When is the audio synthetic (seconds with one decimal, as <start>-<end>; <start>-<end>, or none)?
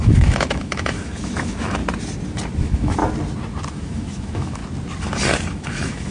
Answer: 0.0-1.8; 2.6-3.0; 3.7-4.6; 5.5-6.1